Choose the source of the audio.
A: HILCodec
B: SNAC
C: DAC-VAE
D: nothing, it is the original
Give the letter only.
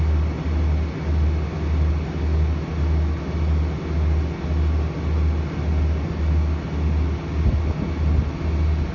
D